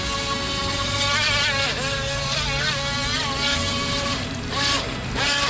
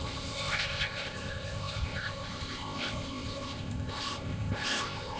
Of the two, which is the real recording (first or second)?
first